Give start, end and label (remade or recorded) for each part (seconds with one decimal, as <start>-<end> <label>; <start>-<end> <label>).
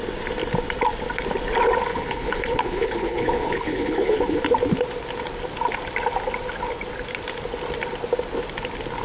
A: 0.0-1.9 recorded; 1.9-4.4 remade; 4.4-9.0 recorded